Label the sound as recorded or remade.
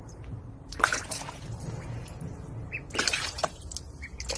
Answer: remade